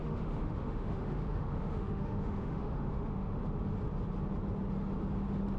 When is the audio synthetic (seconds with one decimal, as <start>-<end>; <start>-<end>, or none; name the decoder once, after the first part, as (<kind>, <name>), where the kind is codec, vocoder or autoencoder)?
0.0-3.4 (autoencoder, DAC-VAE)